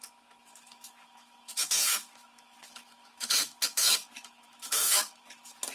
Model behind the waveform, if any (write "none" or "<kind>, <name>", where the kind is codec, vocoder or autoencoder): autoencoder, DAC-VAE